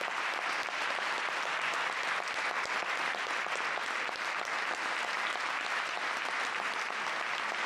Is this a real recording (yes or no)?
yes